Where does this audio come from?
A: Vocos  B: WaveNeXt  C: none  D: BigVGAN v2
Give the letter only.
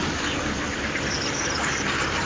C